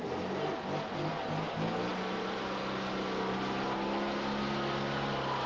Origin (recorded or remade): recorded